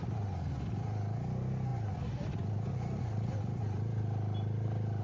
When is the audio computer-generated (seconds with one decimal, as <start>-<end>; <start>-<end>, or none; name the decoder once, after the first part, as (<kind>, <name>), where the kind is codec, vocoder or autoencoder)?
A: none